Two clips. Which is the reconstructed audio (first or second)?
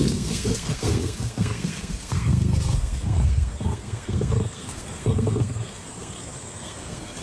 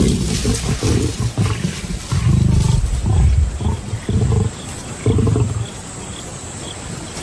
first